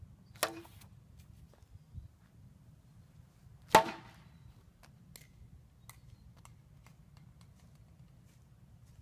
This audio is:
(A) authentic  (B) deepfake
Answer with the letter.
A